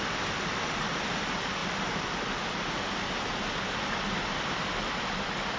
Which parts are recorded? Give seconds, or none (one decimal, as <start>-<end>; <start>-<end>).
0.0-5.6